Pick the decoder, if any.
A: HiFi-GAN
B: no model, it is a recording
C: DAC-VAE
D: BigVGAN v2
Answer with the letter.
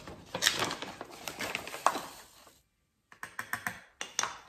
B